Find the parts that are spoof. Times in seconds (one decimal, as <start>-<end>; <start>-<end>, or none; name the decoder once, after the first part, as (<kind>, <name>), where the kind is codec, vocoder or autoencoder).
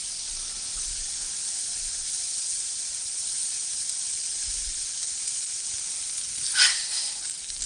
6.7-7.2 (autoencoder, DAC-VAE)